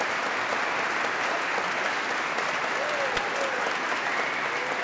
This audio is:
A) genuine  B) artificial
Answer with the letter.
A